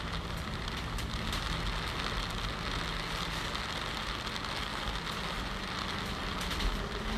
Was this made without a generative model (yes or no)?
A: yes